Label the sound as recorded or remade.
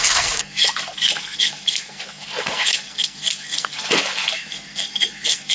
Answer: remade